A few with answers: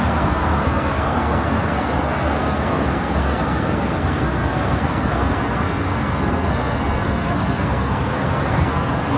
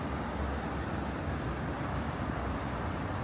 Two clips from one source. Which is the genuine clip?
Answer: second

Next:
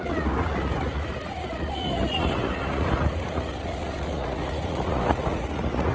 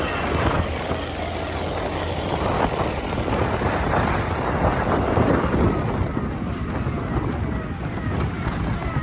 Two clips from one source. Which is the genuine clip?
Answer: second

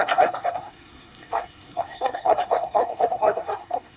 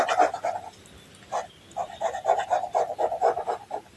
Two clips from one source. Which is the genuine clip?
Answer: second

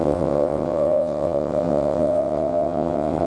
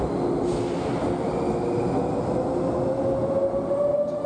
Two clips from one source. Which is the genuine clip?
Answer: second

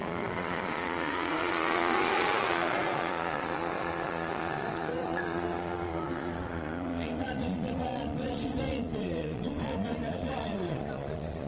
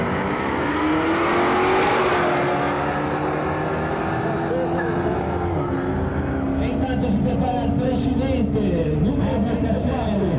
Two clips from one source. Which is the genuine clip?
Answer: second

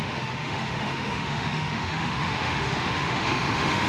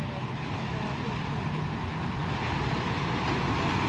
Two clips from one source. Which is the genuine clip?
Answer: second